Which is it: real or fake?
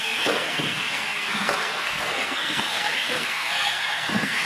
fake